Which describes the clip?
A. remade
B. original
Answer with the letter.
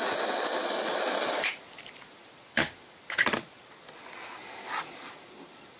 B